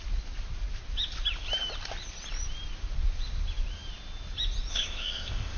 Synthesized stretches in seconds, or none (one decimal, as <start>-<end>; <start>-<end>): 4.7-5.6